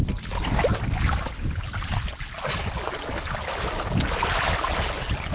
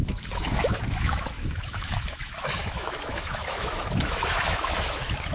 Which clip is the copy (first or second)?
second